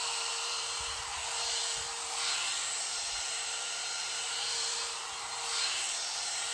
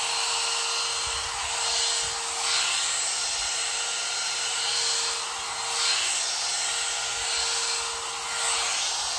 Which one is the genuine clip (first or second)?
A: second